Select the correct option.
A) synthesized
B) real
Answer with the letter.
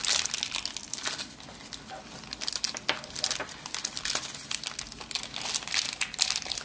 B